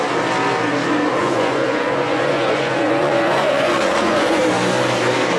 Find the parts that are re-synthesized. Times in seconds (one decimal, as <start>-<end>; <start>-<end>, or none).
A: 1.2-4.4